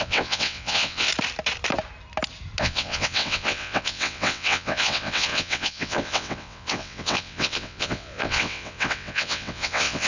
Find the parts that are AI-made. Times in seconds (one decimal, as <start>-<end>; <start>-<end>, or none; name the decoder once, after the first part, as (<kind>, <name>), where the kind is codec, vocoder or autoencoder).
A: 0.0-1.1 (vocoder, WaveNeXt); 2.6-10.1